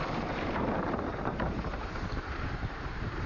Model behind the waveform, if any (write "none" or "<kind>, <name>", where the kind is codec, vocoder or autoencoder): vocoder, BigVGAN v2